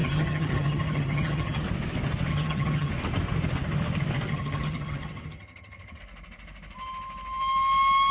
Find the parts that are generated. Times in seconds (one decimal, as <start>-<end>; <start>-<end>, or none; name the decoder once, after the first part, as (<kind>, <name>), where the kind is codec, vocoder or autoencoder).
0.0-1.6 (vocoder, HiFi-GAN); 2.3-2.9; 4.3-6.0